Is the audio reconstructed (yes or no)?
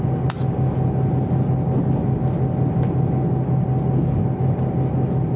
no